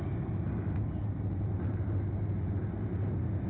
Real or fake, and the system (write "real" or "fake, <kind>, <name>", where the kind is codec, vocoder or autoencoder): real